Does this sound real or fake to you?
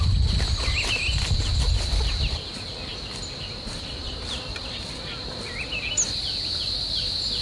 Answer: fake